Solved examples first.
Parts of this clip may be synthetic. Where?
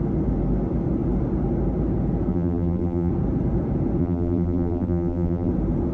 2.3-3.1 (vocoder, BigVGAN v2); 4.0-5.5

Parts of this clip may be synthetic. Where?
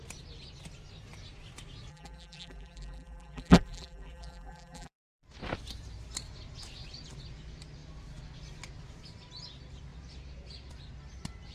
1.9-5.2 (vocoder, BigVGAN v2)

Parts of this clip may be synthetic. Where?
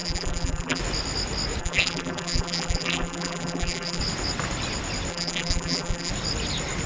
0.0-0.8 (vocoder, BigVGAN v2); 1.6-4.0; 5.1-6.1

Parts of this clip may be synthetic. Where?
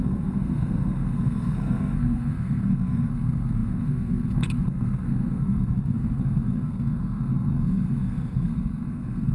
0.0-9.3 (codec, SNAC)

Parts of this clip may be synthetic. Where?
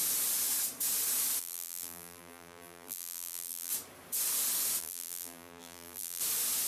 1.4-3.7 (vocoder, BigVGAN v2); 4.8-6.2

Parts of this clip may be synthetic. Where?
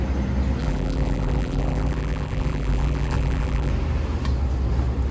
0.6-3.7 (vocoder, BigVGAN v2)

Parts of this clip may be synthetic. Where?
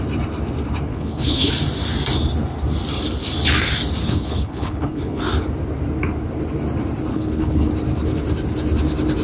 0.9-1.5 (codec, HILCodec); 4.0-5.2; 7.1-7.7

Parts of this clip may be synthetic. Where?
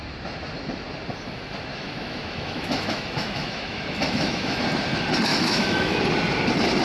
1.7-4.6 (autoencoder, DAC-VAE); 5.3-6.0